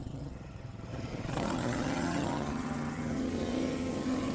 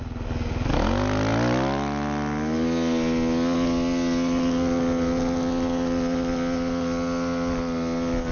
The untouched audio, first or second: second